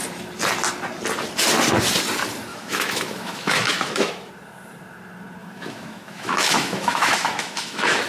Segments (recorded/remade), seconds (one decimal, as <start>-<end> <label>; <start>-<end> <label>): 0.0-2.5 recorded; 2.5-4.3 remade; 4.3-5.4 recorded; 5.4-8.1 remade